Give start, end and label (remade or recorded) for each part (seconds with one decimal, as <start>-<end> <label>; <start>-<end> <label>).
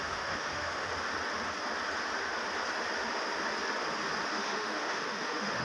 0.0-0.9 remade; 0.9-4.3 recorded; 4.3-5.6 remade